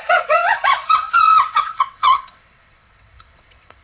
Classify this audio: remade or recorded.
remade